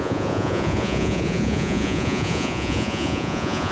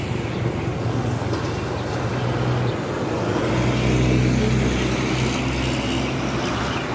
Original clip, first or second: second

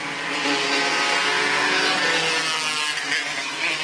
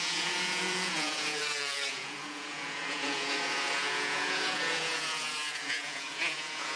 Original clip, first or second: first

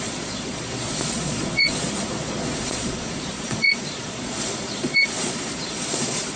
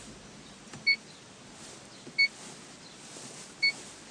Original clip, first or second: second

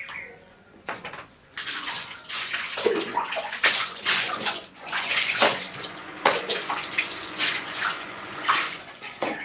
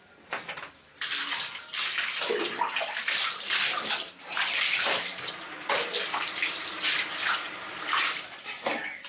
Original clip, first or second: second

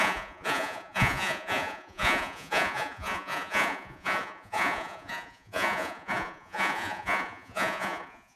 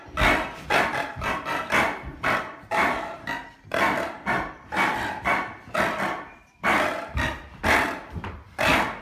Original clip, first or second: second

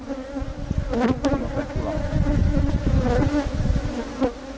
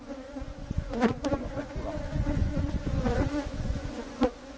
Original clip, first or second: first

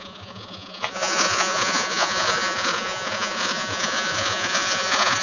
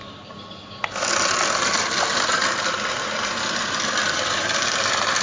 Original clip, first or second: second